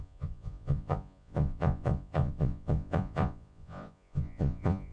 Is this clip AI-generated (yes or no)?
yes